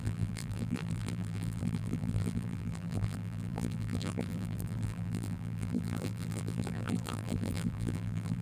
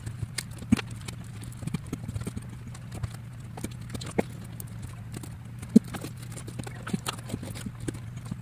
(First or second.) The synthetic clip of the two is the first